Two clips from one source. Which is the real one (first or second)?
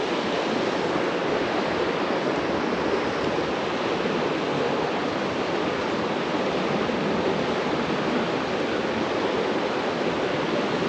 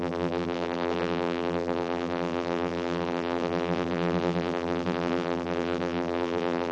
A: first